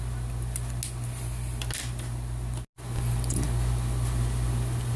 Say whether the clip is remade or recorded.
recorded